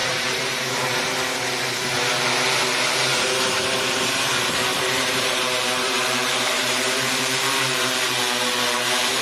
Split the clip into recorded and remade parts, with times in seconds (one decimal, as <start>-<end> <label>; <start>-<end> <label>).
0.0-0.7 remade; 0.7-3.1 recorded; 3.1-8.2 remade; 8.2-9.2 recorded